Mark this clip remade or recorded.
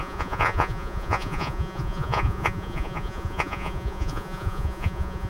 remade